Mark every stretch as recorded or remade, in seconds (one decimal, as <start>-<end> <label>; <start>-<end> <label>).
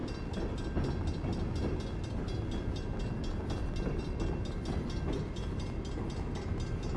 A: 0.0-7.0 recorded